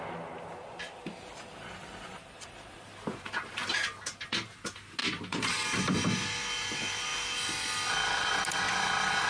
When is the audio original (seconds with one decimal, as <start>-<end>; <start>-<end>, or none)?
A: 0.0-0.8; 2.9-5.0; 5.5-9.3